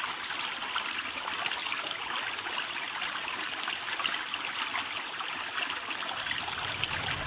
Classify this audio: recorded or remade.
recorded